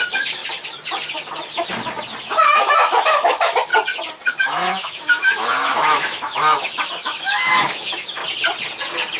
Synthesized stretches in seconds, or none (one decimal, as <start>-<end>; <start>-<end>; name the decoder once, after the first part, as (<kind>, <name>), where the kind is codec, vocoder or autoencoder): 0.0-0.4 (autoencoder, DAC-VAE); 2.2-3.7; 4.3-8.2